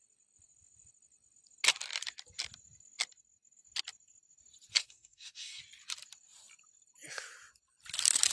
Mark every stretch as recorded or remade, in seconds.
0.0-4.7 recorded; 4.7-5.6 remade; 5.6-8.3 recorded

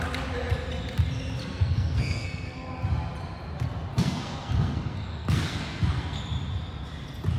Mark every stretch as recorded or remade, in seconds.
0.0-1.4 recorded; 1.4-2.7 remade; 2.7-3.9 recorded; 3.9-6.2 remade; 6.2-7.4 recorded

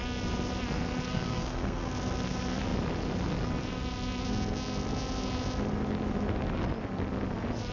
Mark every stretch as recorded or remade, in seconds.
0.0-1.1 recorded; 1.1-1.9 remade; 1.9-7.7 recorded

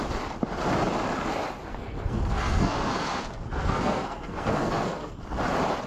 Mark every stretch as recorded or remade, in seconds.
0.0-1.7 recorded; 1.7-5.2 remade; 5.2-5.9 recorded

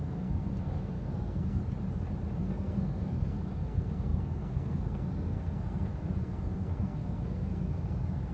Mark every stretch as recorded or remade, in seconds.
0.0-1.6 remade; 1.6-2.4 recorded; 2.4-8.3 remade